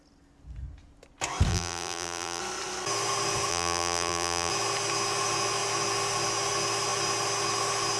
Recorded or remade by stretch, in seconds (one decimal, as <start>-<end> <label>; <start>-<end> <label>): 0.0-1.5 recorded; 1.5-2.4 remade; 2.4-3.5 recorded; 3.5-4.5 remade; 4.5-8.0 recorded